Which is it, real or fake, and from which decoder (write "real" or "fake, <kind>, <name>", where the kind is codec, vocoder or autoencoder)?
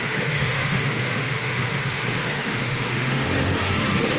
fake, autoencoder, DAC-VAE